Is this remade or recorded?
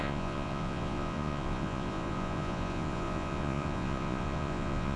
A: remade